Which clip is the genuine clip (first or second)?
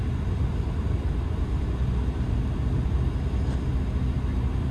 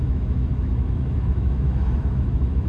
first